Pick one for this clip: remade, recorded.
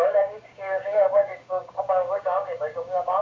remade